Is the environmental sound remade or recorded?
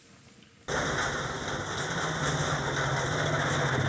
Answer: recorded